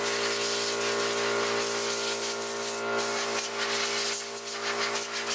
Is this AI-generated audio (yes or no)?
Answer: no